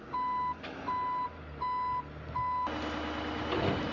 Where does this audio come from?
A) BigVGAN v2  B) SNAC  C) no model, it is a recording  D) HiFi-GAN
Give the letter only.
C